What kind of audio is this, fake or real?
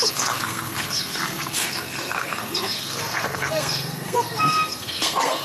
fake